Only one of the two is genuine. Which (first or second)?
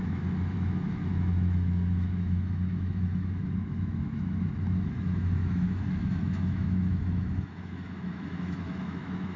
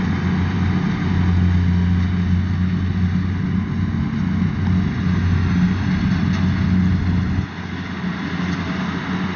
second